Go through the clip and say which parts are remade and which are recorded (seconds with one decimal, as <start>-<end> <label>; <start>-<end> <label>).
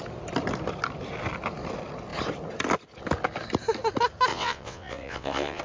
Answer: 0.0-4.3 recorded; 4.3-5.6 remade